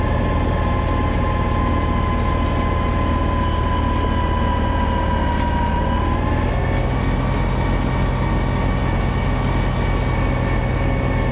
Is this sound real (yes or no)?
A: yes